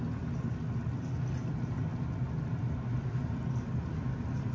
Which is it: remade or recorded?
recorded